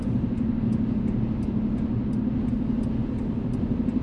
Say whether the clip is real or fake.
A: real